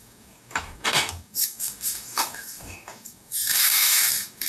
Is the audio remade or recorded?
remade